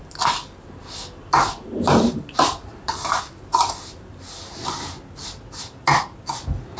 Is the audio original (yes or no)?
yes